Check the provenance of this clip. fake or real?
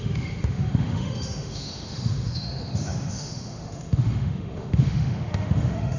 fake